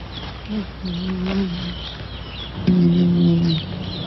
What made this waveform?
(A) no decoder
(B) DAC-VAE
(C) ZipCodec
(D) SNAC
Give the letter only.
A